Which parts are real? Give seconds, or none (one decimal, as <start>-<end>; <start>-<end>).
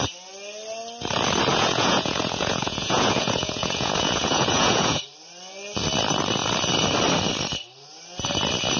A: 0.0-1.5; 5.0-8.8